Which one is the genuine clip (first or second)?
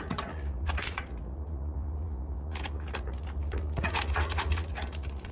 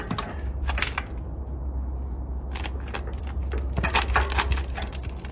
second